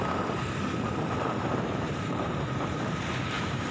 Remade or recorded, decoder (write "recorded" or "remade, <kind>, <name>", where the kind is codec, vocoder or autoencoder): remade, vocoder, BigVGAN v2